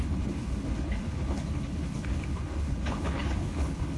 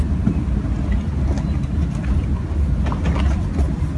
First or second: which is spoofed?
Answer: first